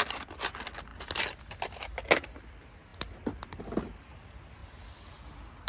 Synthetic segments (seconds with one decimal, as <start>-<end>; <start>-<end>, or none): none